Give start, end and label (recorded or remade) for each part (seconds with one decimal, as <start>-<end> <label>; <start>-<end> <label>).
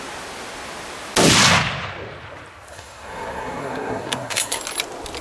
0.0-2.7 recorded; 2.7-4.6 remade; 4.6-5.2 recorded